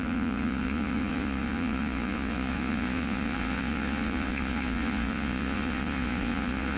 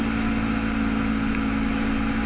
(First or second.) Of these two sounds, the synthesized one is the first